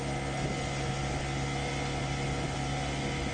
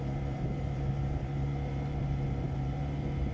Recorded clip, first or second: first